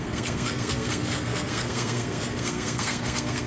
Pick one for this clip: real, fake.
fake